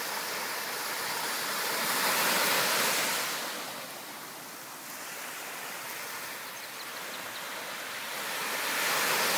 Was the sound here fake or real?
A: real